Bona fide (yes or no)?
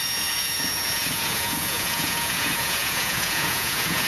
no